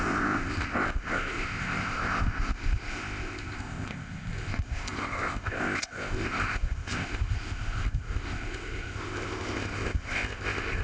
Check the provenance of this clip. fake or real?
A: fake